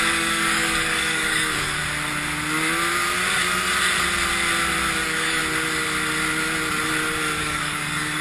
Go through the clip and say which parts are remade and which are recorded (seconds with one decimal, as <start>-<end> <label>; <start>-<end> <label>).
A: 0.0-1.8 remade; 1.8-5.0 recorded; 5.0-5.4 remade; 5.4-7.4 recorded; 7.4-8.2 remade